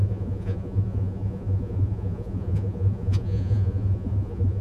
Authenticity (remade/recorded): remade